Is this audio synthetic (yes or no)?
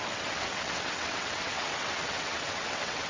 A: yes